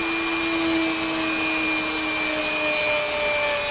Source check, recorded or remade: recorded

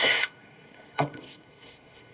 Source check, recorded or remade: remade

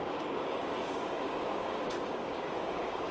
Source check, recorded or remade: remade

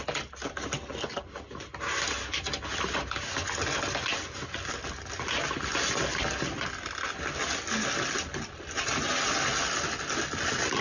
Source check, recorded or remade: recorded